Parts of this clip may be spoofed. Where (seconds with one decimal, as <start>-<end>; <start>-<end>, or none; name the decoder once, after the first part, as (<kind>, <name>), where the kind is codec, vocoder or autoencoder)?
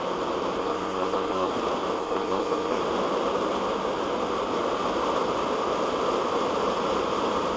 0.6-1.5 (codec, SNAC); 2.0-2.8